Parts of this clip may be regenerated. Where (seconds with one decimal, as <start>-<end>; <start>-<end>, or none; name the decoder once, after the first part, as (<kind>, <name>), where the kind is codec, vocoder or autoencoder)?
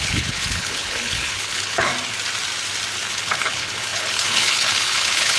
0.0-1.9 (codec, HILCodec); 3.1-5.4